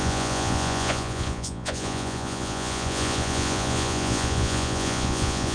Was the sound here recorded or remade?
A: remade